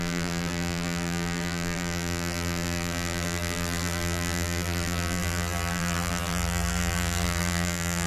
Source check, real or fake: fake